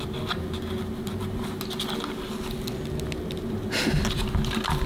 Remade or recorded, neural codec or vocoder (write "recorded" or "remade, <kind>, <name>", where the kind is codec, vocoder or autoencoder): recorded